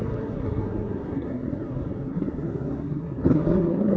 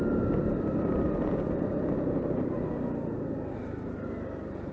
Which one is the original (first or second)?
second